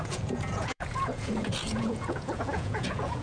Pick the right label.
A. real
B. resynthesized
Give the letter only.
B